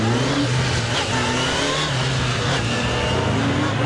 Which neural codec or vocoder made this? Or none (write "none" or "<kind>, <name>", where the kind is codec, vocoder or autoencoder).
none